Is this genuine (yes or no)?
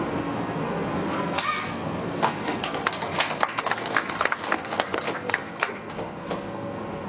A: no